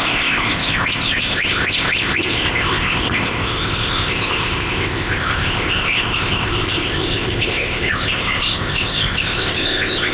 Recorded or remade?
remade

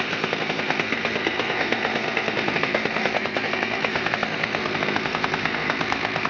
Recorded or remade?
remade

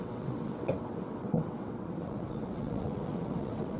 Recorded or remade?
remade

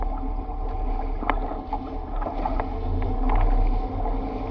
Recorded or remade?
recorded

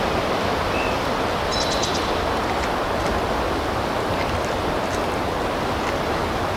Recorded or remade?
recorded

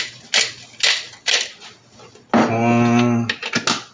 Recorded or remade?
recorded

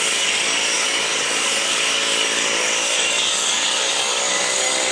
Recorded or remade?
remade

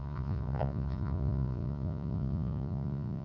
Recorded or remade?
remade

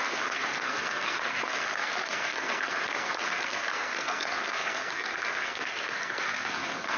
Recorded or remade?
remade